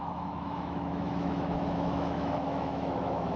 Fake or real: fake